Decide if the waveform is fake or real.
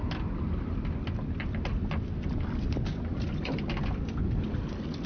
real